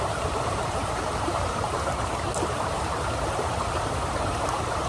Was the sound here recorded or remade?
remade